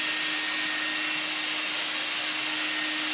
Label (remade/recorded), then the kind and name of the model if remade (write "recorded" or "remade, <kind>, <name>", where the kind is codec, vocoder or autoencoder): recorded